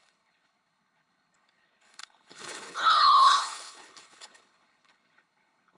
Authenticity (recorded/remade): remade